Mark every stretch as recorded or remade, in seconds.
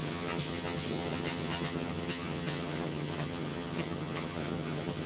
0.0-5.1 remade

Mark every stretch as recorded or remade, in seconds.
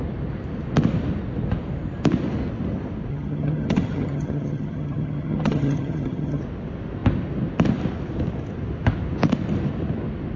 0.0-3.1 recorded; 3.1-6.4 remade; 6.4-10.4 recorded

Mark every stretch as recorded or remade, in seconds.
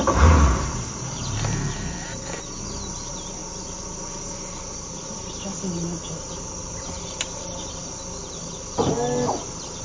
0.0-9.8 recorded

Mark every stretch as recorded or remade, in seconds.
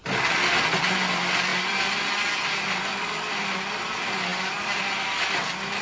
0.0-5.8 recorded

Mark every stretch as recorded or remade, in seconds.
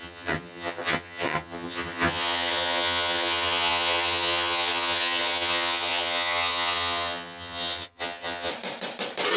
0.0-8.5 remade; 8.5-9.4 recorded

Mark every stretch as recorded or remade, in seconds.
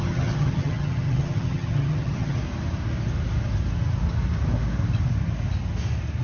0.0-2.4 remade; 2.4-6.2 recorded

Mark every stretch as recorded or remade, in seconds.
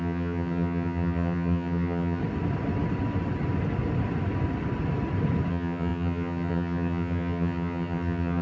0.0-2.2 remade; 2.2-5.5 recorded; 5.5-8.4 remade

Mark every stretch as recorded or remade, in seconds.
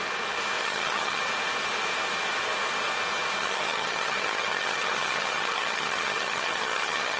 0.0-0.6 recorded; 0.6-1.2 remade; 1.2-3.4 recorded; 3.4-7.2 remade